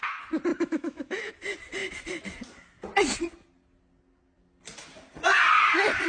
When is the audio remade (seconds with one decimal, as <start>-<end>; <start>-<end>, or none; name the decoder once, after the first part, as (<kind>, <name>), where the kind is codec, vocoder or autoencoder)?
0.5-1.3 (autoencoder, DAC-VAE)

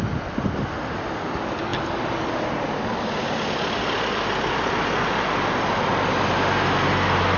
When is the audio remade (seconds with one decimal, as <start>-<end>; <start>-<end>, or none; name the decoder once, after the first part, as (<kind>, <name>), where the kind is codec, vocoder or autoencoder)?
none

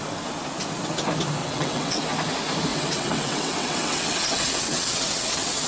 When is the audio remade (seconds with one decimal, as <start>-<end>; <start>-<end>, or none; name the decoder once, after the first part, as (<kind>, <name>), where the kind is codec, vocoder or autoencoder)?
1.4-2.0 (vocoder, WaveNeXt); 2.7-5.7

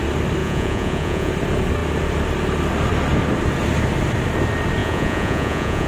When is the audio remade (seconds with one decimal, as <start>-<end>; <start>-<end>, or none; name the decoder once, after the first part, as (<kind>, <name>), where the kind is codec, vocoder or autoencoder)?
0.4-1.3 (vocoder, Vocos); 4.8-5.9

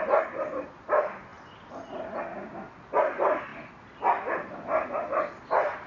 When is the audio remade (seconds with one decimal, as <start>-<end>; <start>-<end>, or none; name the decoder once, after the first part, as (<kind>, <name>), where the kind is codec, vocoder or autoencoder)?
none

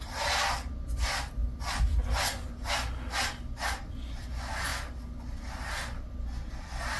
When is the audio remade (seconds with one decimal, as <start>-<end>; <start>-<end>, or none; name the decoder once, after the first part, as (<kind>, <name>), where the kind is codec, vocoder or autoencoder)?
none

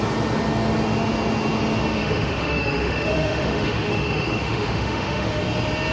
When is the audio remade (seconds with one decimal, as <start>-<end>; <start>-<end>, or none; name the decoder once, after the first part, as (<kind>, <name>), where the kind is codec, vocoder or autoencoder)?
1.9-5.4 (autoencoder, DAC-VAE)